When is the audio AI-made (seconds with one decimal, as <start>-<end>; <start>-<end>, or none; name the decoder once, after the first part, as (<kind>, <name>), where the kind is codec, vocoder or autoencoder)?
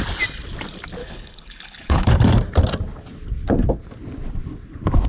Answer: 1.0-2.1 (codec, HILCodec)